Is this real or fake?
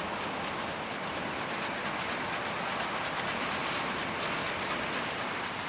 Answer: real